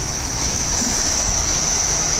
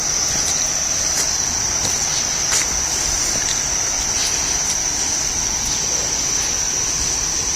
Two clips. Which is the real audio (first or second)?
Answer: second